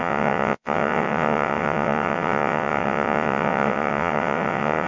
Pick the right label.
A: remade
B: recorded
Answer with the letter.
A